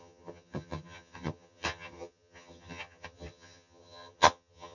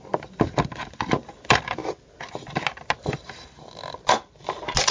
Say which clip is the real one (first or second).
second